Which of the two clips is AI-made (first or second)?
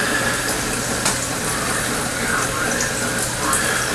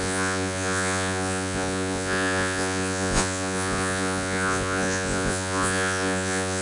second